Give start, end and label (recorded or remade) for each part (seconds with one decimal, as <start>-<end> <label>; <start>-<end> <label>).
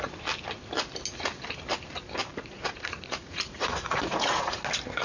0.0-2.3 recorded; 2.3-4.6 remade; 4.6-5.0 recorded